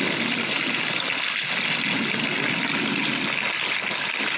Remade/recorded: recorded